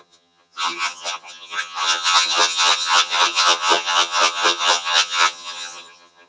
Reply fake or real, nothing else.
fake